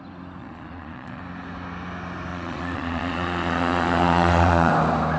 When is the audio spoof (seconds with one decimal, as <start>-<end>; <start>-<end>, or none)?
0.4-1.2; 2.3-4.7